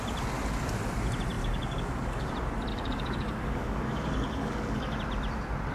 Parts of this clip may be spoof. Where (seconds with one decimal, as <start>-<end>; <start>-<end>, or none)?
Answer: 1.4-2.3; 2.7-5.0